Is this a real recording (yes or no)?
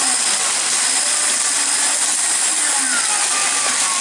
yes